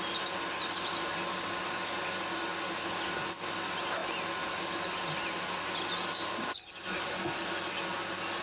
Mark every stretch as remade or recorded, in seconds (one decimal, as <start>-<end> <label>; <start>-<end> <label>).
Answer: 0.0-8.4 recorded